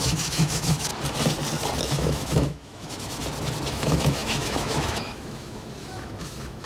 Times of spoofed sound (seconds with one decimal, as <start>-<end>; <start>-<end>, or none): 0.0-0.9; 1.8-3.2; 3.7-6.7